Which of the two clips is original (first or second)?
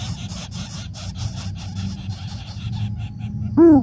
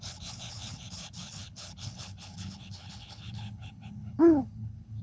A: first